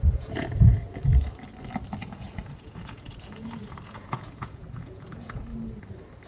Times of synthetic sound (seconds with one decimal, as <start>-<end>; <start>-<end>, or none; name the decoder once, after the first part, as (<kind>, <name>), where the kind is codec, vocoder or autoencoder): 0.0-0.8 (vocoder, Vocos); 2.0-5.5